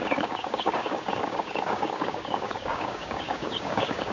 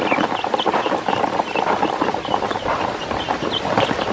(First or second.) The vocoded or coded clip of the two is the first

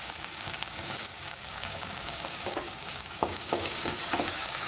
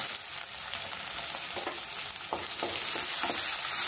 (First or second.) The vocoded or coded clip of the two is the first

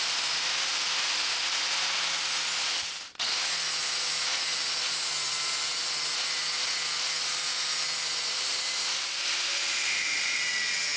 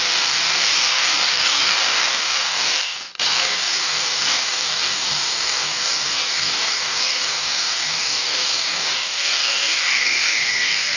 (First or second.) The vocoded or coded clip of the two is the second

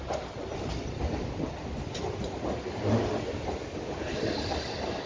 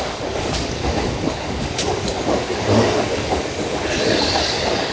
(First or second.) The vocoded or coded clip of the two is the second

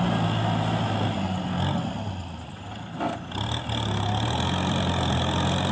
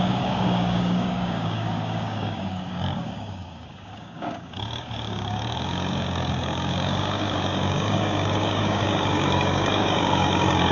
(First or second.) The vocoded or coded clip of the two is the second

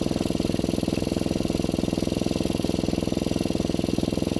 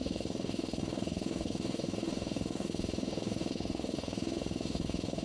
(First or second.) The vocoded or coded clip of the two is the second